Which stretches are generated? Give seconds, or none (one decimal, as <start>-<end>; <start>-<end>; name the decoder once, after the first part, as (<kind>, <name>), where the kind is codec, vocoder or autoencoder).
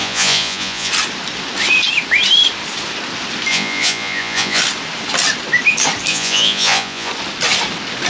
0.0-0.9 (vocoder, Vocos); 3.5-4.6; 6.1-7.1